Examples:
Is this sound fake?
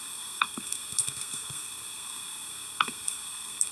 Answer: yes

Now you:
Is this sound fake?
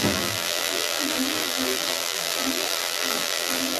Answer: yes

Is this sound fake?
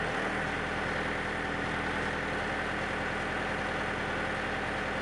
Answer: no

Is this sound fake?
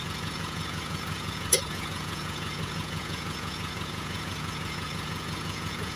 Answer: yes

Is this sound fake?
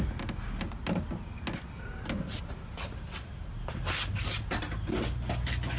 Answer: no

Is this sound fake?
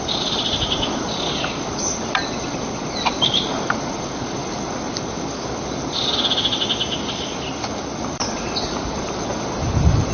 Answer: no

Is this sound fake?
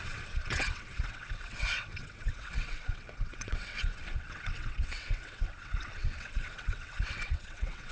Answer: yes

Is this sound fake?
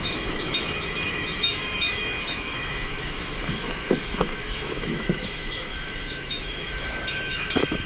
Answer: yes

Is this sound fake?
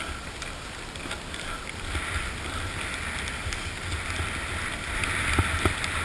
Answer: no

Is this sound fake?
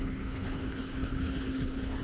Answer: yes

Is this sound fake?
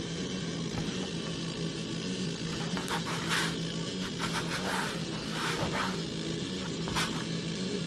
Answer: no